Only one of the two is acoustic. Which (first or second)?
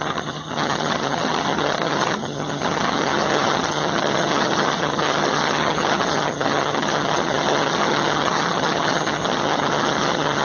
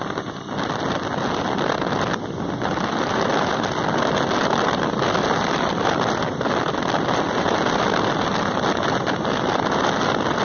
second